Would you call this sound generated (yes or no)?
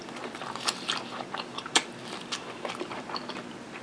no